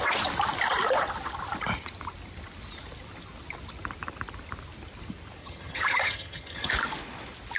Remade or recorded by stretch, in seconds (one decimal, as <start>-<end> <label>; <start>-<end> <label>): 0.0-5.4 recorded; 5.4-6.7 remade; 6.7-7.6 recorded